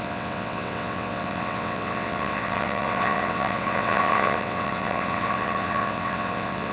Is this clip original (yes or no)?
no